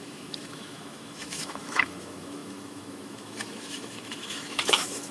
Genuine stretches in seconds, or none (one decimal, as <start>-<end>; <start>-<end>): none